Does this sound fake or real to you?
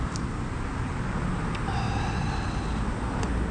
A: real